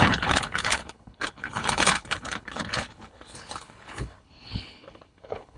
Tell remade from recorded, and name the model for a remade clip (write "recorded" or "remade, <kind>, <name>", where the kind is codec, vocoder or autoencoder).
remade, codec, HILCodec